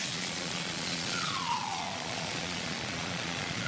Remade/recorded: remade